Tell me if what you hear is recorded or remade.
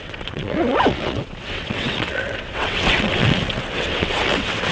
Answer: remade